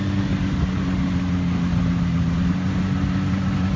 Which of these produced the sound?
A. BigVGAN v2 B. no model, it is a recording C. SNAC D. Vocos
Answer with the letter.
B